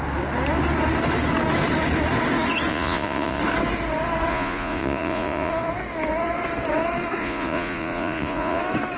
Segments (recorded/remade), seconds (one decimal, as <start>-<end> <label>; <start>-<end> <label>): 0.0-2.7 recorded; 2.7-3.4 remade; 3.4-4.3 recorded; 4.3-5.5 remade; 5.5-7.2 recorded; 7.2-8.6 remade; 8.6-9.0 recorded